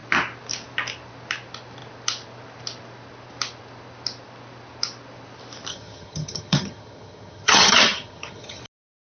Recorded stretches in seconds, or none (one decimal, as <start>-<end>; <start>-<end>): 0.0-5.7; 8.6-9.1